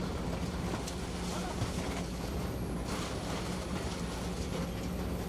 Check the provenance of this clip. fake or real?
real